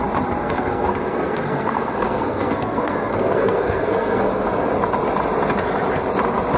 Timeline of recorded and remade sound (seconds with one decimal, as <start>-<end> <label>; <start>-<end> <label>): 0.0-0.4 recorded; 0.4-4.4 remade; 4.4-6.6 recorded